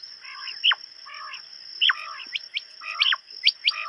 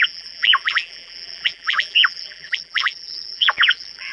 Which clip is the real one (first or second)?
first